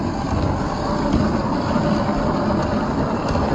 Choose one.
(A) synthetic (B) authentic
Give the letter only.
B